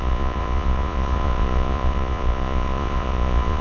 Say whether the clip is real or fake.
fake